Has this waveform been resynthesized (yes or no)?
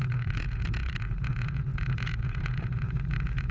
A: yes